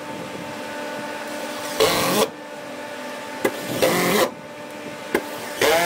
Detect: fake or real real